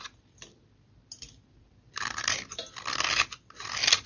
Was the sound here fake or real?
fake